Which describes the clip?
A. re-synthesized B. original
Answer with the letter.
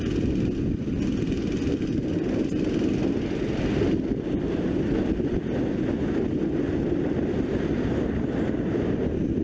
B